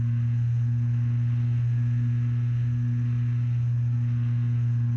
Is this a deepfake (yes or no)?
no